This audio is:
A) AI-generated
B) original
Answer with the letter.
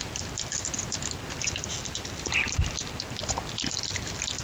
B